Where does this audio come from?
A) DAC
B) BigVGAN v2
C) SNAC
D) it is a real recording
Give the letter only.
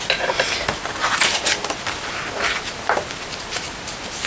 D